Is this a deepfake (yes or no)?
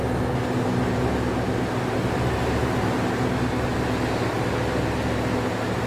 no